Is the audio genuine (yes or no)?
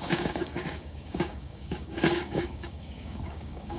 no